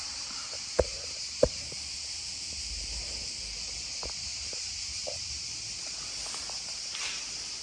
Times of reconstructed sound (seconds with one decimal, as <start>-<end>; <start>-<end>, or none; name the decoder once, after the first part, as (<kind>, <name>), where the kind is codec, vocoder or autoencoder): 0.4-3.2 (vocoder, BigVGAN v2); 5.0-5.6